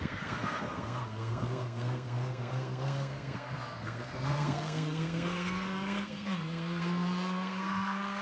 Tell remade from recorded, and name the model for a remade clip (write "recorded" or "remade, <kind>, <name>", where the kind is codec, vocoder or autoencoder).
remade, codec, SNAC